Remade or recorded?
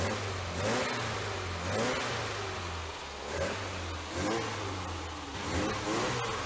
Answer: recorded